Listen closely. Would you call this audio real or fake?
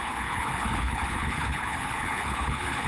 fake